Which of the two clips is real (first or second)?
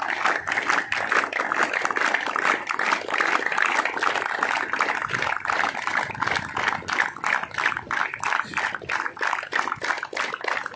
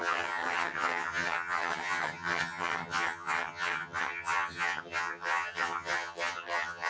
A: first